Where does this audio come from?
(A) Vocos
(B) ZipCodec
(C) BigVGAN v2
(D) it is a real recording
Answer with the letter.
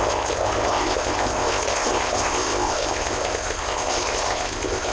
B